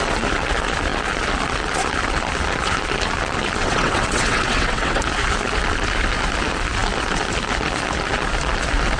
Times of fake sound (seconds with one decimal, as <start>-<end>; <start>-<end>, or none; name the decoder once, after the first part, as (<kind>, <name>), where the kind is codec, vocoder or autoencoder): 3.6-5.0 (vocoder, WaveNeXt)